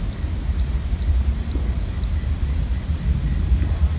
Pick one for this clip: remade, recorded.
recorded